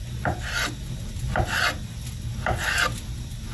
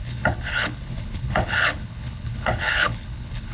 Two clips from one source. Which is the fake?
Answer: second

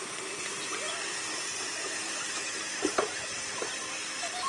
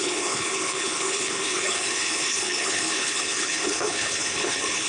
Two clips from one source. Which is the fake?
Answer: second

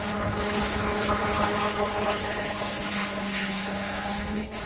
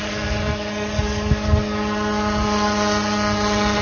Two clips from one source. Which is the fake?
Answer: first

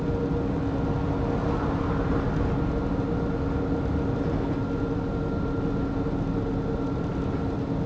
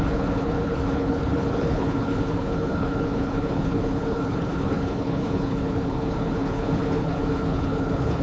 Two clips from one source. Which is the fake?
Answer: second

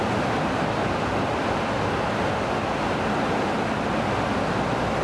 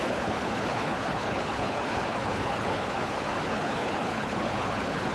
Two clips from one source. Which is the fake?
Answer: second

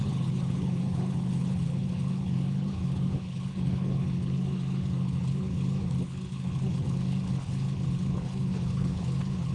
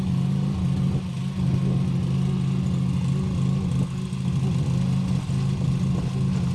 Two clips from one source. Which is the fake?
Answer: first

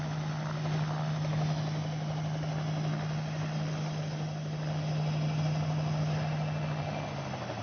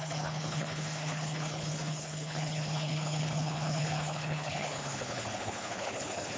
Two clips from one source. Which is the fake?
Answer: second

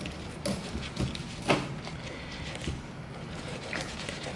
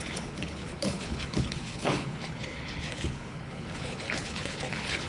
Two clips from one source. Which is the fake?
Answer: second